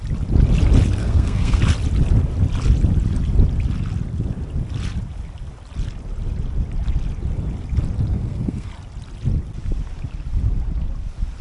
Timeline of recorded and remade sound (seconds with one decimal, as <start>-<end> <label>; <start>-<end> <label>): 0.0-1.0 recorded; 1.0-1.6 remade; 1.6-8.1 recorded; 8.1-8.7 remade; 8.7-11.4 recorded